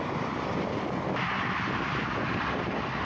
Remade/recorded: recorded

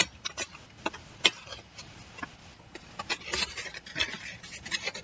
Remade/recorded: recorded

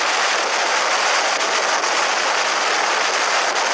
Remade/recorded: recorded